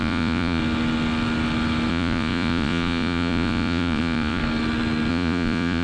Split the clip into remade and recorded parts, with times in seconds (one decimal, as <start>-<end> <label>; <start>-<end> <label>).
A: 0.0-0.6 remade; 0.6-1.9 recorded; 1.9-4.4 remade; 4.4-5.1 recorded; 5.1-5.8 remade